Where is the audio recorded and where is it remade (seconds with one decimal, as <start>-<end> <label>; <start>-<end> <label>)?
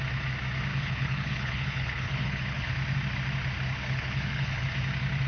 0.0-0.7 recorded; 0.7-2.7 remade; 2.7-3.8 recorded; 3.8-4.6 remade; 4.6-5.3 recorded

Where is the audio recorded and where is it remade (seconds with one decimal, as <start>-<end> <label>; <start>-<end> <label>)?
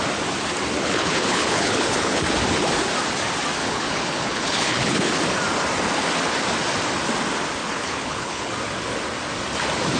0.0-0.8 recorded; 0.8-2.2 remade; 2.2-3.6 recorded; 3.6-5.1 remade; 5.1-7.6 recorded; 7.6-8.5 remade; 8.5-10.0 recorded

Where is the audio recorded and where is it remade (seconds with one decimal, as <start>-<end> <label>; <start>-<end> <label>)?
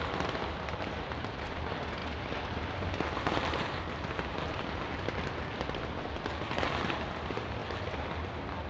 0.0-8.7 recorded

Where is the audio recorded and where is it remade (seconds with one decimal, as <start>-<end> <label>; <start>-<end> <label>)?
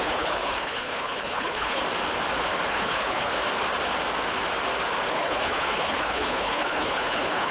0.0-1.8 remade; 1.8-2.7 recorded; 2.7-3.3 remade; 3.3-5.1 recorded; 5.1-7.5 remade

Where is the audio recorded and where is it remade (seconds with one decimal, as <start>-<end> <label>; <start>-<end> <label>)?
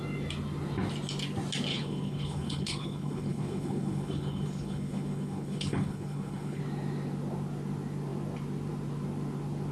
0.0-1.7 recorded; 1.7-6.6 remade; 6.6-9.7 recorded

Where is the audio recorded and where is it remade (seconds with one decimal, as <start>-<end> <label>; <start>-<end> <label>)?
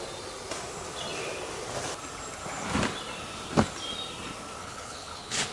0.0-4.6 recorded; 4.6-5.5 remade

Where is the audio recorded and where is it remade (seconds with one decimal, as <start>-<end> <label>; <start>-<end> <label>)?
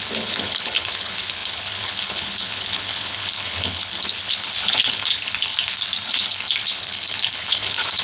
0.0-5.5 remade; 5.5-6.1 recorded; 6.1-8.0 remade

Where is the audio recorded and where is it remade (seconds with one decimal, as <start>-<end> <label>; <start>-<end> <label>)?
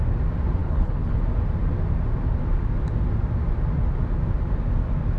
0.0-0.6 recorded; 0.6-1.2 remade; 1.2-5.2 recorded